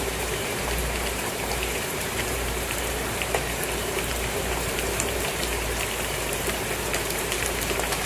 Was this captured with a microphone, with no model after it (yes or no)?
no